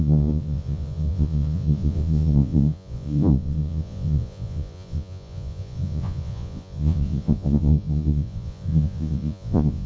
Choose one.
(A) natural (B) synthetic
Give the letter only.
B